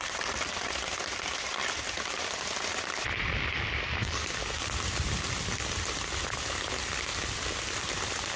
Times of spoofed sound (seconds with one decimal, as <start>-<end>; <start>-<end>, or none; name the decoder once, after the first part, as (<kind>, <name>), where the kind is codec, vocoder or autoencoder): none